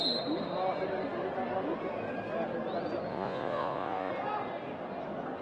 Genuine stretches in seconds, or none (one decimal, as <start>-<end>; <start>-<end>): 0.0-3.1; 4.1-5.4